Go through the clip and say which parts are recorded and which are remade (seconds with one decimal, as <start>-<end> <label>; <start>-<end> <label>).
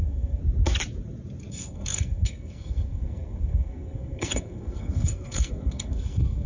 0.0-0.4 remade; 0.4-1.5 recorded; 1.5-6.5 remade